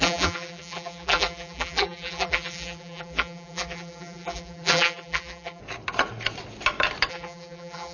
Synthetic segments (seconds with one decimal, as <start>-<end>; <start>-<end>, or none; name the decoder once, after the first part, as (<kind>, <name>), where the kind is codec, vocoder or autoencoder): 0.0-5.6 (vocoder, BigVGAN v2); 7.1-7.9